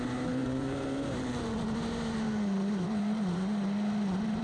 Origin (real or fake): fake